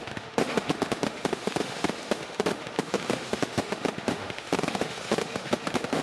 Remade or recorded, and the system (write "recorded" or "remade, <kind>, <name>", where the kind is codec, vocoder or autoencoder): remade, autoencoder, DAC-VAE